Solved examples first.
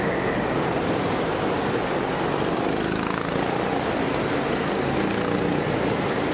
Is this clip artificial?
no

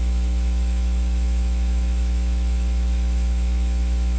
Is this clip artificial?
yes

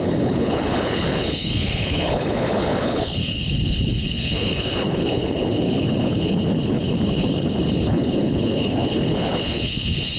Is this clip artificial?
yes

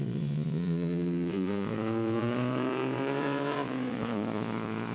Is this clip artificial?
yes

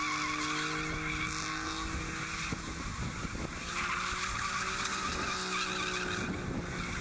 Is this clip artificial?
no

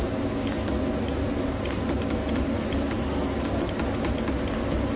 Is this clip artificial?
no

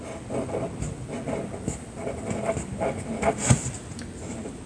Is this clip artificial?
no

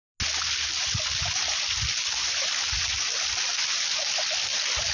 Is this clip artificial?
no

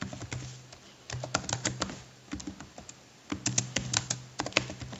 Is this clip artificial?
no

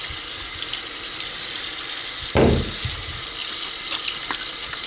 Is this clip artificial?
no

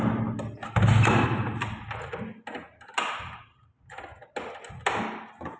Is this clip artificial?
no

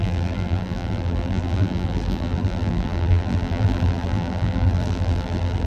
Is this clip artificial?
yes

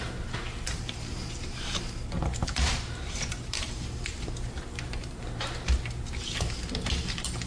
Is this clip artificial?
yes